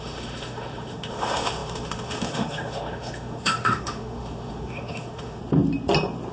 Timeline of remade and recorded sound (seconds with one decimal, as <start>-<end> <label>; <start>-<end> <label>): 0.0-5.4 remade; 5.4-6.3 recorded